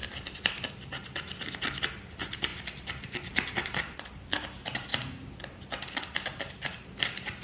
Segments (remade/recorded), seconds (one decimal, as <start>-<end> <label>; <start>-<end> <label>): 0.0-0.7 recorded; 0.7-2.5 remade; 2.5-3.0 recorded; 3.0-4.9 remade; 4.9-6.5 recorded; 6.5-7.4 remade